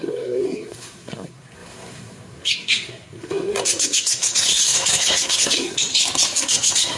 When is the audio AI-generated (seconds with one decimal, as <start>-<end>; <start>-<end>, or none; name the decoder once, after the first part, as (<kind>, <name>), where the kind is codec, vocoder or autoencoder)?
0.0-5.9 (codec, SNAC); 6.4-7.0